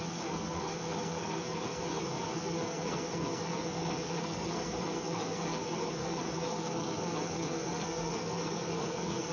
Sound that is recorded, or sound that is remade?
remade